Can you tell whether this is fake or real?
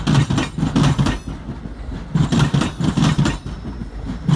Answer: real